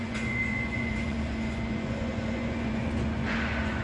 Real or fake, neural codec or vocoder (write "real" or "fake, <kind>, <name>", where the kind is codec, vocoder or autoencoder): fake, vocoder, Vocos